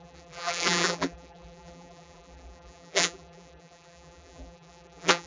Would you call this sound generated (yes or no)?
yes